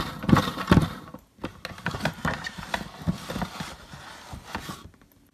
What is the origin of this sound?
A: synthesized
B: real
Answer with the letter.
B